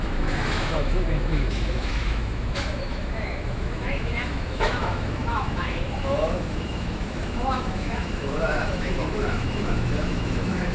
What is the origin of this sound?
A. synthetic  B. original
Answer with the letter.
A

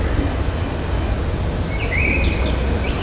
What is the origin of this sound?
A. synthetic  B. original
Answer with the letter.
B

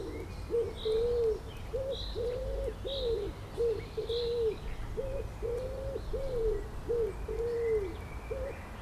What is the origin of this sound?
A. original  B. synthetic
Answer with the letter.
A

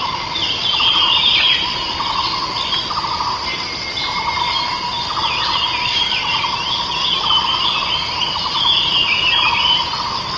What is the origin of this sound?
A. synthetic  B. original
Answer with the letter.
B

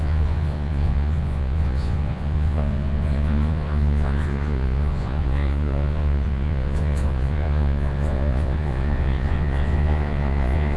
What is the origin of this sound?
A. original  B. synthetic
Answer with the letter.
B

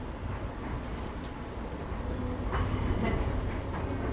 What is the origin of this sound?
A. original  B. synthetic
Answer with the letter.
A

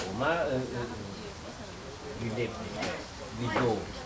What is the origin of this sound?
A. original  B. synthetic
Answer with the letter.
A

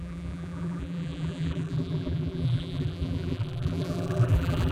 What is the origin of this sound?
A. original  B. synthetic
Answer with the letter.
B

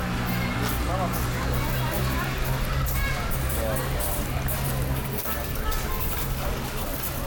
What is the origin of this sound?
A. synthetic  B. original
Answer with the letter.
B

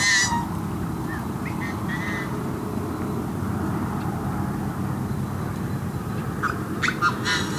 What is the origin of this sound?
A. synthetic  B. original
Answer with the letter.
B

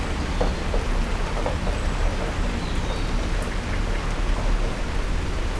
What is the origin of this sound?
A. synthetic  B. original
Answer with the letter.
B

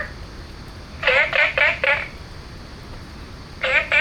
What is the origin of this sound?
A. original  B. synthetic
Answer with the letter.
A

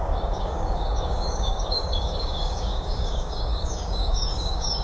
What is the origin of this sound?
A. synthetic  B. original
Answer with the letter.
A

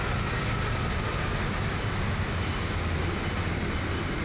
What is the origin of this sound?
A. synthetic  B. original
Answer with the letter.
B